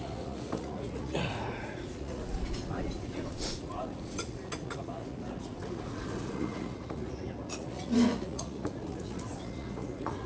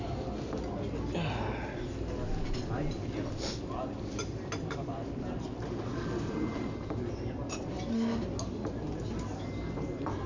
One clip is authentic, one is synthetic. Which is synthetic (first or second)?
first